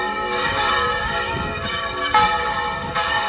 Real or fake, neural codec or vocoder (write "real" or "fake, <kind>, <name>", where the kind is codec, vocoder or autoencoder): fake, codec, DAC